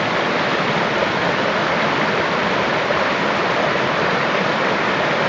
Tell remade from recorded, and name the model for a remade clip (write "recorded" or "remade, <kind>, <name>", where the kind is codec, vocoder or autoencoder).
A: recorded